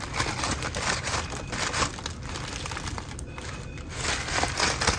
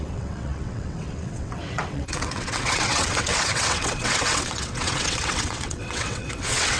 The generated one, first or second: second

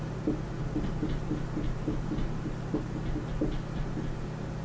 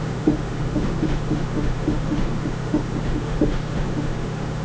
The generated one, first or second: second